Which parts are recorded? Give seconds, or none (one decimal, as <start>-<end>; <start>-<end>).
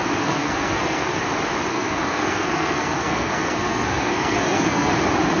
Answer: 1.2-1.7; 4.9-5.4